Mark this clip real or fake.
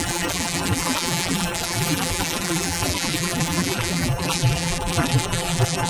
fake